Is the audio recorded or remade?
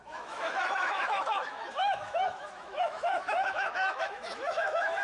remade